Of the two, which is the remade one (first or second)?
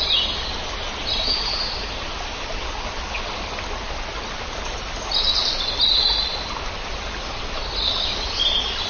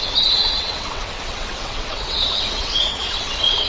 second